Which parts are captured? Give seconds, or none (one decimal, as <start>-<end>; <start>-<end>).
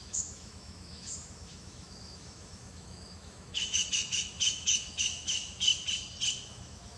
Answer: 5.7-6.5